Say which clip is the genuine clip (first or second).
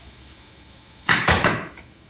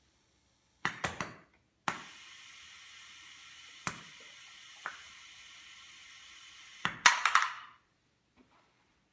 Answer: second